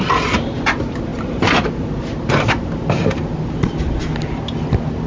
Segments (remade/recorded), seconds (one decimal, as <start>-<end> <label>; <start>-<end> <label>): 0.0-5.1 recorded